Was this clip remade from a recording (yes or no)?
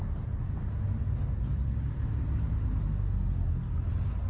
no